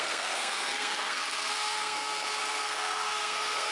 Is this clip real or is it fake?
fake